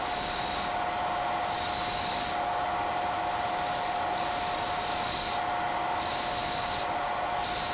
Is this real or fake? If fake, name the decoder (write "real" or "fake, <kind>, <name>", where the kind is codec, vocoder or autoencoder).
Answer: real